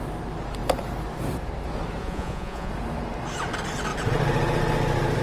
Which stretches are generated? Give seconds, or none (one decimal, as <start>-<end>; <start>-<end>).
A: 2.0-2.7